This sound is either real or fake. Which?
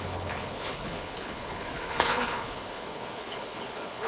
fake